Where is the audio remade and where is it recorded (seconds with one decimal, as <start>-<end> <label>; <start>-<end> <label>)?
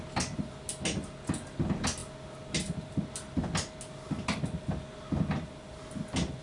0.0-6.4 recorded